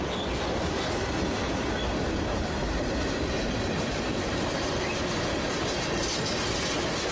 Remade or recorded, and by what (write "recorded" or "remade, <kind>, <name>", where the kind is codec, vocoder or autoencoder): recorded